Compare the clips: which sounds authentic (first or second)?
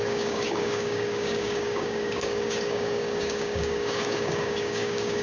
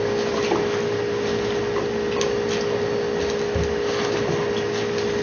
second